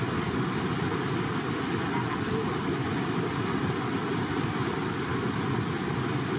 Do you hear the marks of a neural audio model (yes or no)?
no